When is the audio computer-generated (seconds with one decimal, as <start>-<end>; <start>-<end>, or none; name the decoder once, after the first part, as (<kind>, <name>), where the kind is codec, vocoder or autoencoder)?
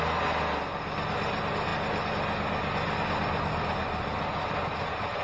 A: none